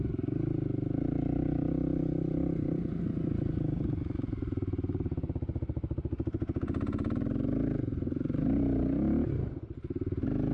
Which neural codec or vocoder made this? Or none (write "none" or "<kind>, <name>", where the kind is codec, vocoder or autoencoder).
none